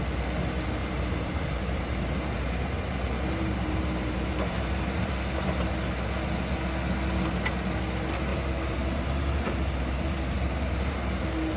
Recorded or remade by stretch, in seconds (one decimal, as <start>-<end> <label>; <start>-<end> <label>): 0.0-0.8 recorded; 0.8-5.1 remade; 5.1-8.3 recorded; 8.3-11.2 remade; 11.2-11.6 recorded